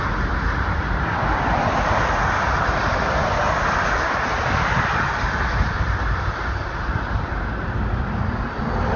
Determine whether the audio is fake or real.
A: real